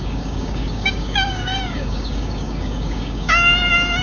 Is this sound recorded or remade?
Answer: remade